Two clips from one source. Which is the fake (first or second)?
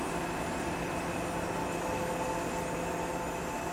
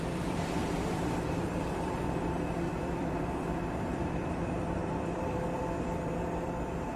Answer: second